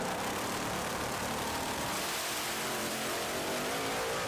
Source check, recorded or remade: remade